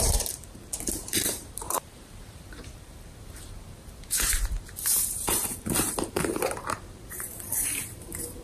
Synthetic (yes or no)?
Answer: yes